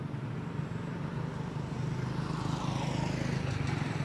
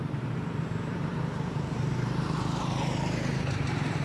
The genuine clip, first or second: first